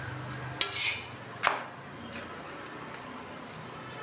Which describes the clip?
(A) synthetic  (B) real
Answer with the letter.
B